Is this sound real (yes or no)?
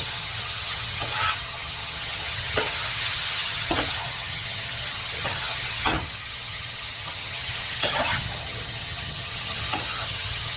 no